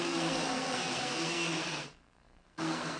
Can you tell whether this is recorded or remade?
remade